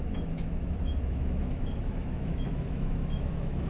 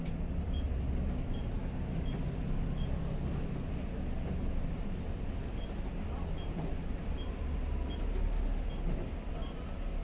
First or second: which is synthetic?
first